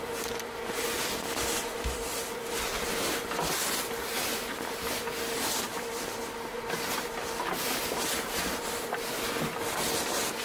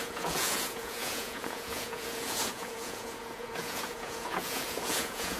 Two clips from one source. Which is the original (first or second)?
first